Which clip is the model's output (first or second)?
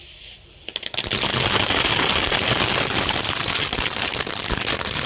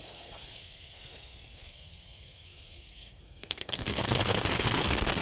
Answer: second